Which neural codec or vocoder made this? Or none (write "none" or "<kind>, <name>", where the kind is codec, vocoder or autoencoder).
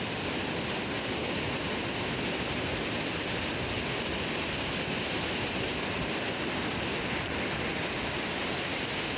none